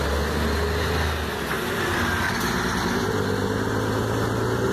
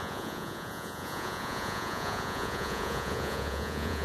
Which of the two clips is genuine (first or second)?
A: first